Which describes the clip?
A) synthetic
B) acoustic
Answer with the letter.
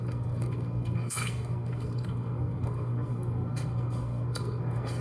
A